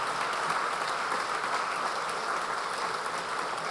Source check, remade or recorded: recorded